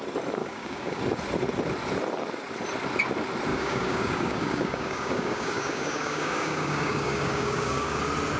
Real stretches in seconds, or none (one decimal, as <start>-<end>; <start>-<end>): 0.0-0.4; 1.0-3.5; 8.0-8.4